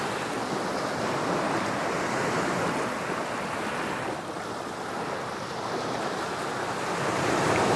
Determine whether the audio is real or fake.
real